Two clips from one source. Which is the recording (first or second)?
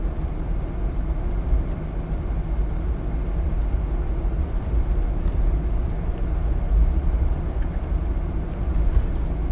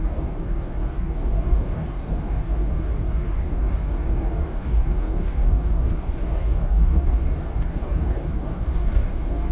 first